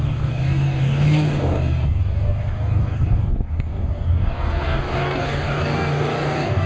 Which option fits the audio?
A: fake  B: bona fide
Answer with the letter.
A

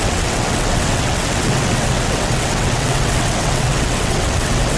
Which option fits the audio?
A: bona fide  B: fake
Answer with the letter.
B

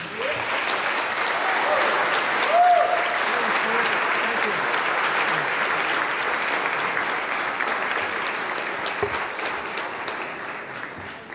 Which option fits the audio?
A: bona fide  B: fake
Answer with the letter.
A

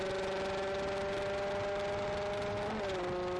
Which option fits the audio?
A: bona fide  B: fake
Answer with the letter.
A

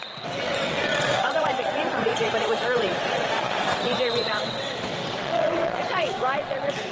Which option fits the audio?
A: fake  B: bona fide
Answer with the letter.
A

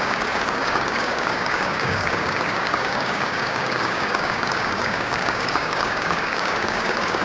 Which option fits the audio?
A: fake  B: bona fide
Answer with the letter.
A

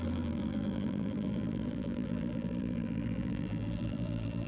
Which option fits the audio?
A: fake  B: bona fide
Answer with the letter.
A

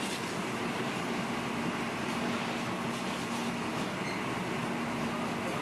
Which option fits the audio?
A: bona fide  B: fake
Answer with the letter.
A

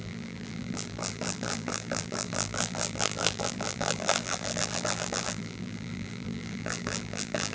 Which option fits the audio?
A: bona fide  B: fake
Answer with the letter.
B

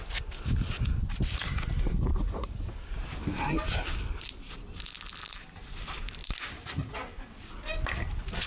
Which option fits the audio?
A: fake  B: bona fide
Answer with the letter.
B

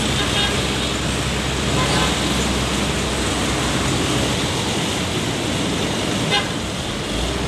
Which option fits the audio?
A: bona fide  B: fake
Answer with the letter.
A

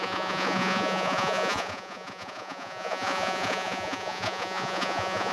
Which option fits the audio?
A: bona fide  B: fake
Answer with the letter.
B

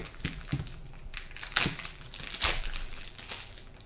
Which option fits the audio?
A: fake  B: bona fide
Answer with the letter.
A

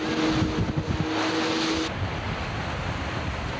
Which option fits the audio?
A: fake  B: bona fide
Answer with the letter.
B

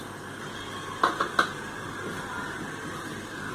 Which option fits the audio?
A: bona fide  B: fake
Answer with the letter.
A